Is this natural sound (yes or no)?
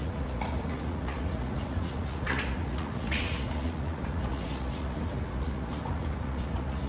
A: no